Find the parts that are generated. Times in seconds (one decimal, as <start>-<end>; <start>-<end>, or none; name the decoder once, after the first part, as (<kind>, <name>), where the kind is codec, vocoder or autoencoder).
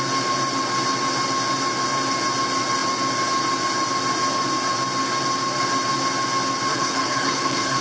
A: 6.7-7.8 (codec, HILCodec)